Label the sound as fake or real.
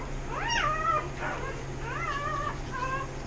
real